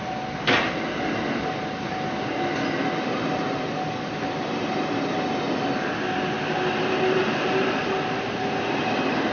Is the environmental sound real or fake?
real